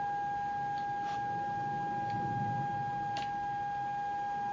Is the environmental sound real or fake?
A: real